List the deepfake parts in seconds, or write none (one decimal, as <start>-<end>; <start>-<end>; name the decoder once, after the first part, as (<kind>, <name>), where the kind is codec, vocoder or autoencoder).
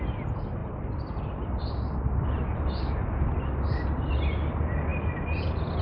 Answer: none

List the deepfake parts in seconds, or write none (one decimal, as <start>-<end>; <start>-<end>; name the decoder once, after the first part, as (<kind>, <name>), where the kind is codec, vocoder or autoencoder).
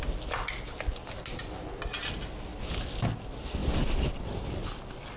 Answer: 3.6-4.5 (vocoder, BigVGAN v2)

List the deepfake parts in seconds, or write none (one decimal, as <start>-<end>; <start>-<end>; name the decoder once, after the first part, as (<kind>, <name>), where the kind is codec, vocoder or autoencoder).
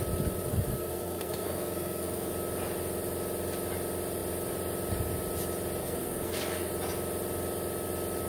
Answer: 0.5-2.3 (codec, SNAC); 5.8-6.7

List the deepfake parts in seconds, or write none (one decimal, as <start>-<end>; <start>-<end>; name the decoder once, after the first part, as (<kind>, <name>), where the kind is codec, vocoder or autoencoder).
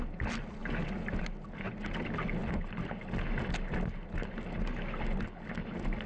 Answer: none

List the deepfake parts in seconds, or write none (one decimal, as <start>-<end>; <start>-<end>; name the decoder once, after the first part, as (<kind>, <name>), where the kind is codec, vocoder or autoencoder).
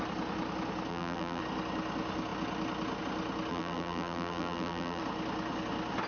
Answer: 0.9-1.4 (vocoder, BigVGAN v2); 3.5-5.0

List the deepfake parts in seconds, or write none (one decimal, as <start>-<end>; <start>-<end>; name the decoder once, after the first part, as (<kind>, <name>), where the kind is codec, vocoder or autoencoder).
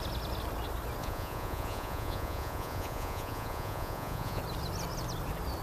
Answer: 1.0-4.4 (vocoder, Vocos)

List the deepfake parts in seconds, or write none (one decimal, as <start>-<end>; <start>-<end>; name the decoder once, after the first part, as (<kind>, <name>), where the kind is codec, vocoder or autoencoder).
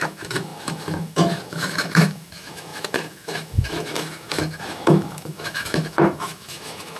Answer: 0.0-7.0 (autoencoder, DAC-VAE)